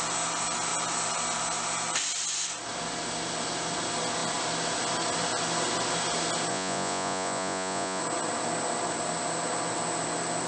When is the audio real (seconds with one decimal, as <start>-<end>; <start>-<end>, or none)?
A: 0.0-6.5; 8.0-10.5